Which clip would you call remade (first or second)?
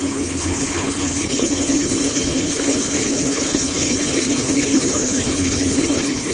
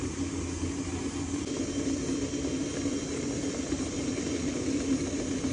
first